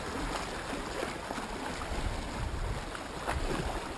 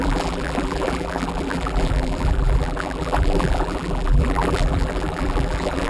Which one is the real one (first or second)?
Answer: first